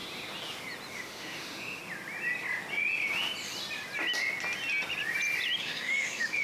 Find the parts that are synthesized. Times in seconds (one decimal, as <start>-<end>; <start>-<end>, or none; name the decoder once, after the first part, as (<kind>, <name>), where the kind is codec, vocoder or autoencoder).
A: 0.9-1.8 (autoencoder, DAC-VAE); 5.6-6.4